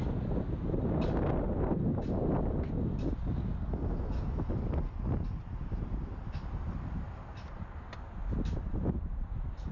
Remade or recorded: recorded